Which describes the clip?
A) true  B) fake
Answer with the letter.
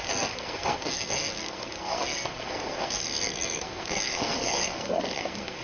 B